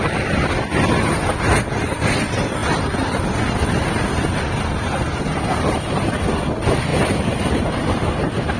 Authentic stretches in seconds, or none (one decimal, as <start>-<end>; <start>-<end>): 0.0-8.6